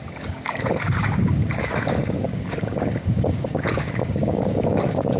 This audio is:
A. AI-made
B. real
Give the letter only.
A